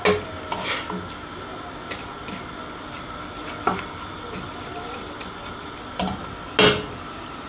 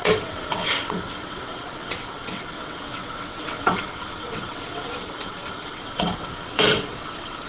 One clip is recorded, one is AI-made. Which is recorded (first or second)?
first